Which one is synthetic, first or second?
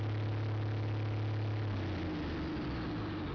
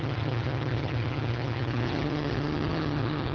second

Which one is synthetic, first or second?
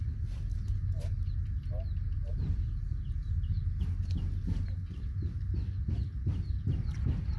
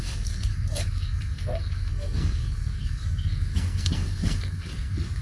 second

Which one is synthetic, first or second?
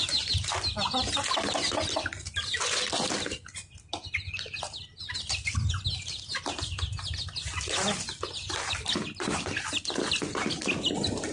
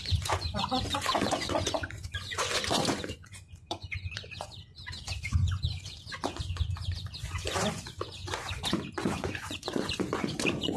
second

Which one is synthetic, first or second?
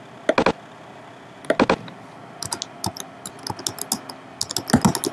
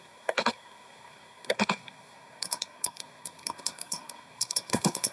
second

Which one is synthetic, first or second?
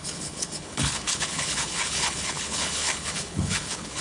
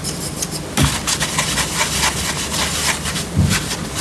first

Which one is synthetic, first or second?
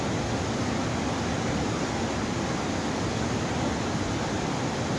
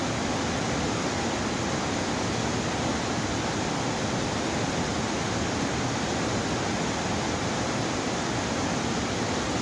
first